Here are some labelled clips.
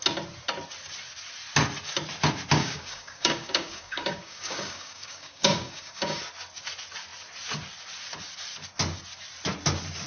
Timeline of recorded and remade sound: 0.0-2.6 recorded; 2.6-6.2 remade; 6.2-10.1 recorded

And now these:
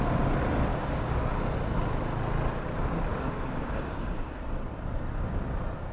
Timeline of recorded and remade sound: 0.0-0.7 recorded; 0.7-1.3 remade; 1.3-3.1 recorded; 3.1-4.4 remade; 4.4-5.9 recorded